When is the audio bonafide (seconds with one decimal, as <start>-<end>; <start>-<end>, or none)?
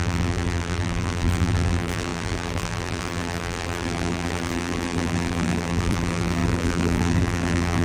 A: none